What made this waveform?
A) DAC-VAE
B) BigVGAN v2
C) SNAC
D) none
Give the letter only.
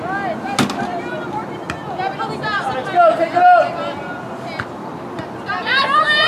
D